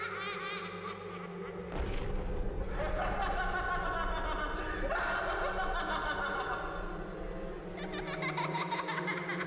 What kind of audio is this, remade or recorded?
recorded